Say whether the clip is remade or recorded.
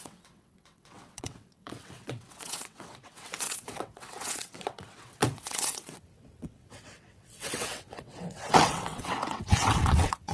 remade